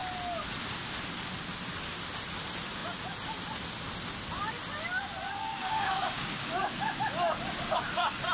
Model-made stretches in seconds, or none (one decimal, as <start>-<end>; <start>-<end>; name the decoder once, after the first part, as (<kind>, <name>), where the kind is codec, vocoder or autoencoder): 5.4-6.5 (codec, DAC)